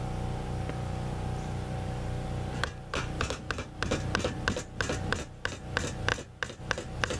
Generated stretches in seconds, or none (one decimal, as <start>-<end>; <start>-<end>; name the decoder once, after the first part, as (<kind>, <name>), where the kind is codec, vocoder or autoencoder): none